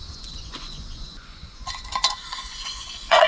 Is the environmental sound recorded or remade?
remade